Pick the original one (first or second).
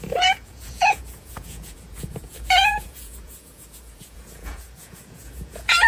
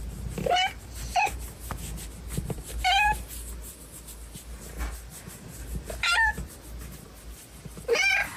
second